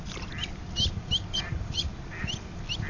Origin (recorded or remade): recorded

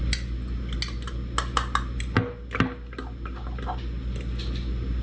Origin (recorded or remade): recorded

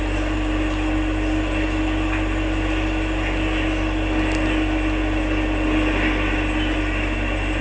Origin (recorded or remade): recorded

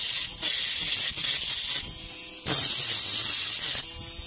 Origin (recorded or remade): recorded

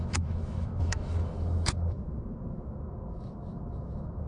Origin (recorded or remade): remade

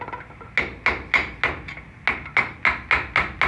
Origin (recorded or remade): recorded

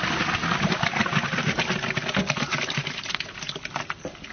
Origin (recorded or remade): recorded